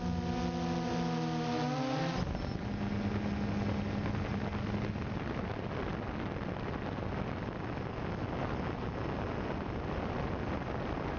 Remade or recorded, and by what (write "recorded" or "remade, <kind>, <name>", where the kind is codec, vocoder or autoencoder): recorded